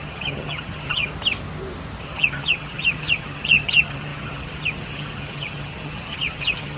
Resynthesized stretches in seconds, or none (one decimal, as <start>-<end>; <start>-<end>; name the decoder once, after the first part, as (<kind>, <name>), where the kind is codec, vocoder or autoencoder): 0.0-1.1 (vocoder, HiFi-GAN); 2.0-6.8